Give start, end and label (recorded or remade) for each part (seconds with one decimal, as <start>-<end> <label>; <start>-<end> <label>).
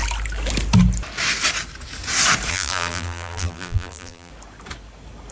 0.0-2.5 recorded; 2.5-4.3 remade; 4.3-5.3 recorded